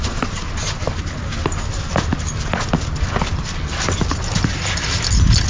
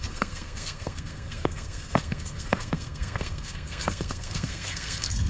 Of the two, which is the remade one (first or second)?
second